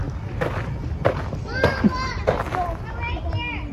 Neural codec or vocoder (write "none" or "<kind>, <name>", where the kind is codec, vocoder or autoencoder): none